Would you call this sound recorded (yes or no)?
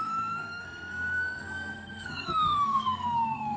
no